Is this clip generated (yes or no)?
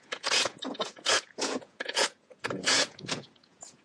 yes